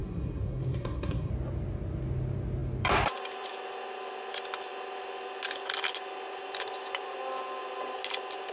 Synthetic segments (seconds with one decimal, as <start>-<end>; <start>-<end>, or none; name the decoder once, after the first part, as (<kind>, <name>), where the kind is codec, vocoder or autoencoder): 0.0-1.3 (codec, SNAC)